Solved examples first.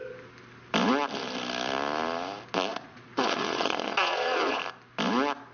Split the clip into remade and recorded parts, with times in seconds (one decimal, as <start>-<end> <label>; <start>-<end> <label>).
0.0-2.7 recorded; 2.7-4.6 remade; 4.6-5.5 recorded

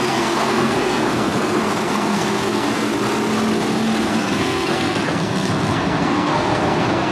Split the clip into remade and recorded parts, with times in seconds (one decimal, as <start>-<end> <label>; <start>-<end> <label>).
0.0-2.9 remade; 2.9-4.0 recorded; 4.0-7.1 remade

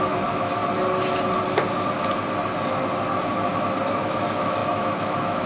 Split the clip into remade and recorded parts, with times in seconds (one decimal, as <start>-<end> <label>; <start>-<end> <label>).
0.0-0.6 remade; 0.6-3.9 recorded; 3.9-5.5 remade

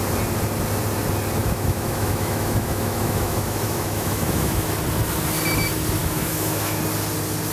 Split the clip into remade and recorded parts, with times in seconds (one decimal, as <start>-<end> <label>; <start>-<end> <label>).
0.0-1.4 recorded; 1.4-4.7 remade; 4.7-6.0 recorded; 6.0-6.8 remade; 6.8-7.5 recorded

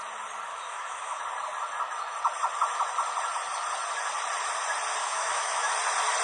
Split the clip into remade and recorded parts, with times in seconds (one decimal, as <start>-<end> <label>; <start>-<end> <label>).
0.0-0.5 recorded; 0.5-1.2 remade; 1.2-5.0 recorded; 5.0-5.7 remade; 5.7-6.2 recorded

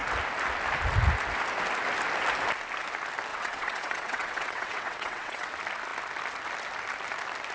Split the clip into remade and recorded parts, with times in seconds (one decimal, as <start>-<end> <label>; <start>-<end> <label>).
0.0-3.3 recorded; 3.3-5.5 remade; 5.5-7.5 recorded

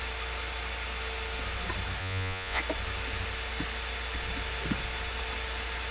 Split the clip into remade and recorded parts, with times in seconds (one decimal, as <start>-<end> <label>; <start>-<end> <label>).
0.0-2.0 recorded; 2.0-2.6 remade; 2.6-5.9 recorded

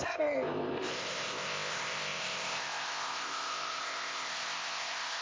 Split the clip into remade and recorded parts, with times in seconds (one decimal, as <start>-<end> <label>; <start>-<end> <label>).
0.0-5.2 remade